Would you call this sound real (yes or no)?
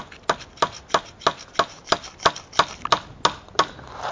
yes